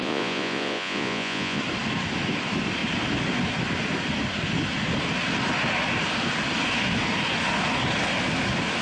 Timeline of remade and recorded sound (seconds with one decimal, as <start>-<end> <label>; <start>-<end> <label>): 0.0-1.6 remade; 1.6-8.8 recorded

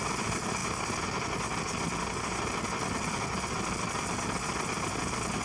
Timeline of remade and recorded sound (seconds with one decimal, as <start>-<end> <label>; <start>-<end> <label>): 0.0-5.4 recorded

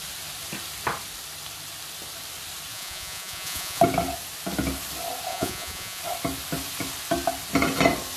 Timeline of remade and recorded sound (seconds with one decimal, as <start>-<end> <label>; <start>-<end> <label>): 0.0-2.7 recorded; 2.7-3.8 remade; 3.8-5.3 recorded; 5.3-6.0 remade; 6.0-8.2 recorded

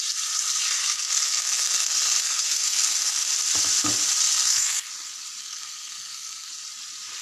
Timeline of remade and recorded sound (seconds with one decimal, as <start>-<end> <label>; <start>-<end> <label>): 0.0-0.8 recorded; 0.8-3.2 remade; 3.2-4.2 recorded; 4.2-4.9 remade; 4.9-5.4 recorded; 5.4-6.5 remade; 6.5-7.2 recorded

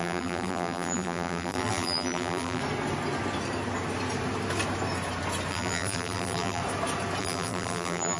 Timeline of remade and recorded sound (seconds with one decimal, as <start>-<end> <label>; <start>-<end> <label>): 0.0-2.6 remade; 2.6-5.5 recorded; 5.5-6.6 remade; 6.6-7.2 recorded; 7.2-8.2 remade

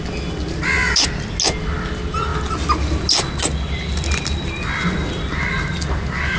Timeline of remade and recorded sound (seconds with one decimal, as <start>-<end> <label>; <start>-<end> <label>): 0.0-6.4 recorded